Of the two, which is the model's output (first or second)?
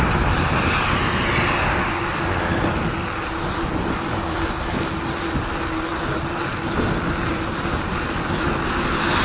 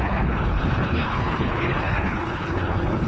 second